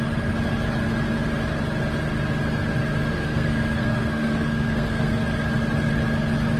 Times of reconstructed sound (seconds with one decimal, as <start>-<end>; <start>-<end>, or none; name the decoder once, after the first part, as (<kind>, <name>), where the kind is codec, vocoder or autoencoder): 3.1-5.2 (codec, SNAC)